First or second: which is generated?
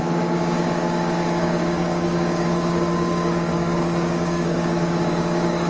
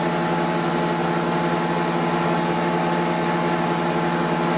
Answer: first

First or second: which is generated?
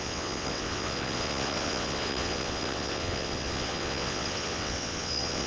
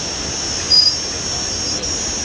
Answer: first